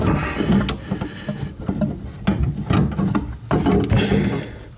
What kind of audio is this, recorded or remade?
recorded